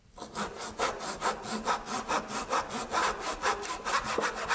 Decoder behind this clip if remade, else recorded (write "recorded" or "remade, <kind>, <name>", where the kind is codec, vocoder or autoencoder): recorded